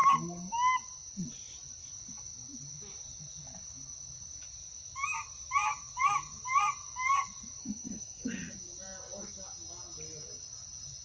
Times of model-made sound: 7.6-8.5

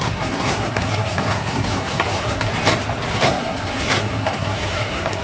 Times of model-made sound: 0.0-2.5; 3.1-5.2